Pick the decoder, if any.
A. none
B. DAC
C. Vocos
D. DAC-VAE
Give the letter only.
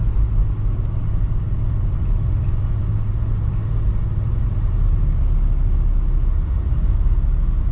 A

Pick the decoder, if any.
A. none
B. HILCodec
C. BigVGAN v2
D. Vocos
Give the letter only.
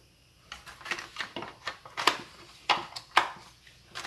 A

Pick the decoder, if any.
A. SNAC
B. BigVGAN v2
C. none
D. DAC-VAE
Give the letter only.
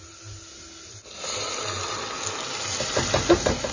C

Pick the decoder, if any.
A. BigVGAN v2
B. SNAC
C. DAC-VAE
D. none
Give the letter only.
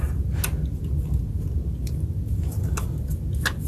D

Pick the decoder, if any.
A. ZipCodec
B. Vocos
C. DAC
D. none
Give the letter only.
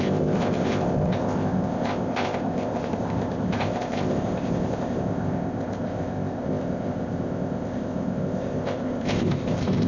A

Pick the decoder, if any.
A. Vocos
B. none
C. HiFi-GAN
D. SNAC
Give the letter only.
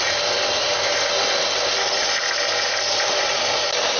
B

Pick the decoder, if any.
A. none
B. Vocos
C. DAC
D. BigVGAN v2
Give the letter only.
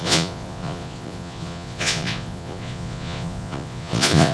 B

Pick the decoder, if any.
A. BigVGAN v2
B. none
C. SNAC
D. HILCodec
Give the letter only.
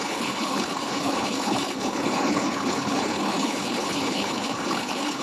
D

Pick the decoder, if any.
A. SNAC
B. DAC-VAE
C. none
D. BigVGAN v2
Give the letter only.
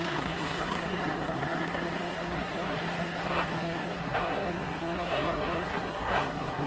A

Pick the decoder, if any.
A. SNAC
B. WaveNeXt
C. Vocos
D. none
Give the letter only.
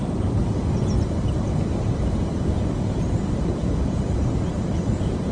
D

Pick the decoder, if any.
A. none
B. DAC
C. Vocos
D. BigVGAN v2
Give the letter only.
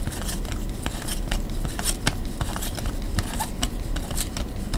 D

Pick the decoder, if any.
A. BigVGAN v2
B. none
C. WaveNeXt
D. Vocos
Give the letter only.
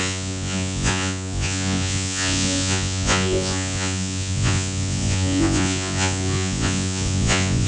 D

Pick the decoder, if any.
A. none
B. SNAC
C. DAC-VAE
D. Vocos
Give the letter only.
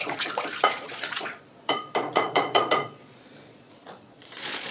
D